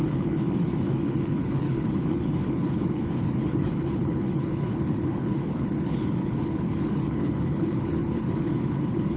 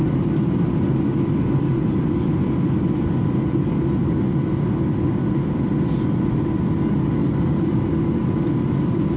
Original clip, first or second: second